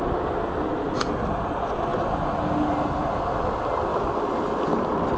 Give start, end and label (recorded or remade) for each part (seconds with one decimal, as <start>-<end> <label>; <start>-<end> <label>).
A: 0.0-3.9 recorded; 3.9-4.8 remade; 4.8-5.2 recorded